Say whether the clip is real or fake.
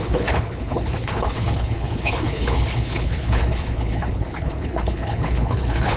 fake